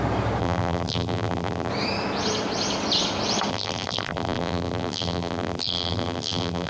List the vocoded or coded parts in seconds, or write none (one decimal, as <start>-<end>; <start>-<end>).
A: 0.4-1.7; 3.5-6.7